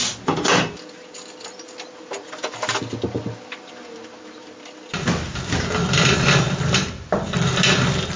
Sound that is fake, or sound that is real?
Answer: real